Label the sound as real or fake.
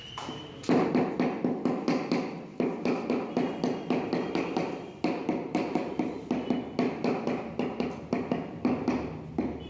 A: real